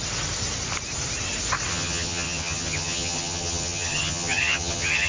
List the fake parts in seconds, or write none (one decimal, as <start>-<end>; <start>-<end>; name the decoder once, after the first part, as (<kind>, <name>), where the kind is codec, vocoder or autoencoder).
1.7-5.1 (vocoder, HiFi-GAN)